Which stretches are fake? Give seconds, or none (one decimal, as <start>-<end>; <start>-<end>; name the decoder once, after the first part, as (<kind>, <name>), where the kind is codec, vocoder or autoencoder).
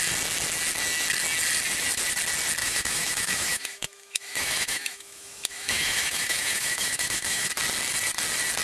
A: 2.6-7.5 (autoencoder, DAC-VAE)